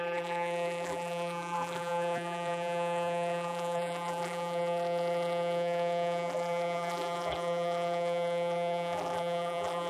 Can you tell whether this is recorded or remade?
remade